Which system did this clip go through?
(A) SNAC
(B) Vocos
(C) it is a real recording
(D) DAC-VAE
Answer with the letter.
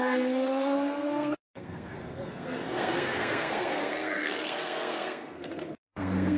A